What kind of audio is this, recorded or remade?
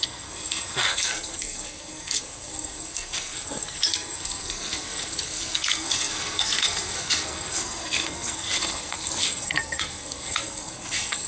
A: remade